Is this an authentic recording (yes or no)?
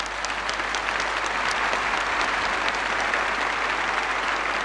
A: yes